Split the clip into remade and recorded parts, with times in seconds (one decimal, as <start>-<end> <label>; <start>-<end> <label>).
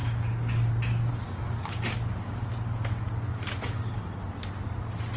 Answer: 0.0-0.7 remade; 0.7-1.1 recorded; 1.1-1.8 remade; 1.8-3.3 recorded; 3.3-4.0 remade; 4.0-5.2 recorded